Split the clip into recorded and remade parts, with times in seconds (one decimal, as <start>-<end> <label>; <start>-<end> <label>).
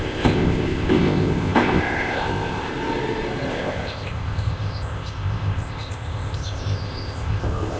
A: 0.0-2.7 remade; 2.7-3.5 recorded; 3.5-7.8 remade